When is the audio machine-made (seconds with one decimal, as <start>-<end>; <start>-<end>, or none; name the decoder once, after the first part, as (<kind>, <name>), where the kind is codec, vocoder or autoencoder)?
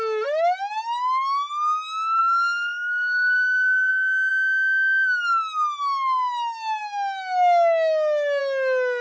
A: 2.2-3.9 (codec, DAC)